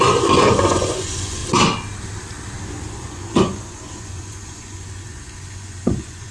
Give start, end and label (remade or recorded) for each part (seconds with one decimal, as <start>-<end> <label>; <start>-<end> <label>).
0.0-1.4 remade; 1.4-2.7 recorded; 2.7-6.3 remade